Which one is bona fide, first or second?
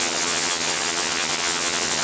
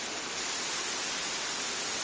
second